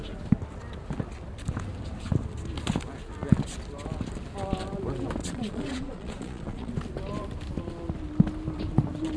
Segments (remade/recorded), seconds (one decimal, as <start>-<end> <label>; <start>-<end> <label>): 0.0-5.2 recorded; 5.2-6.7 remade; 6.7-9.2 recorded